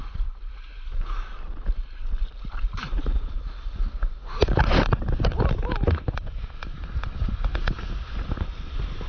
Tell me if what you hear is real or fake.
real